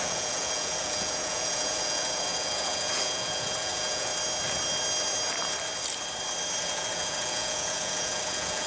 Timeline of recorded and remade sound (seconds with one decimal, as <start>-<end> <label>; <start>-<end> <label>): 0.0-4.1 remade; 4.1-6.6 recorded; 6.6-8.7 remade

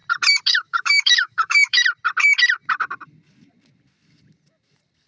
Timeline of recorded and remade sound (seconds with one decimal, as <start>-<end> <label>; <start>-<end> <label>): 0.0-0.5 recorded; 0.5-1.8 remade; 1.8-5.1 recorded

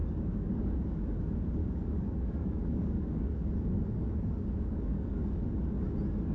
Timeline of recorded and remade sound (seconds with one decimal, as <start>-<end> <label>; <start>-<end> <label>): 0.0-1.1 remade; 1.1-1.6 recorded; 1.6-5.4 remade; 5.4-6.3 recorded